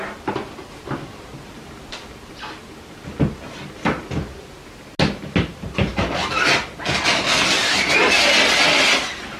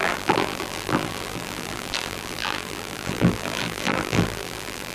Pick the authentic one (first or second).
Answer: first